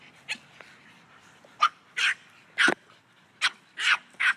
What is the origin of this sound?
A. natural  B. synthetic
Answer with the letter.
A